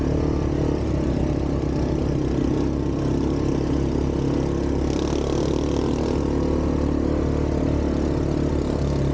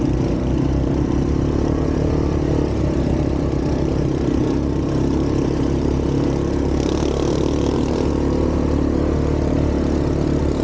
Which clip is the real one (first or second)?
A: first